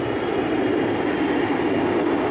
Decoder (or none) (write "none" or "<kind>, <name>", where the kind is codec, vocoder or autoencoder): none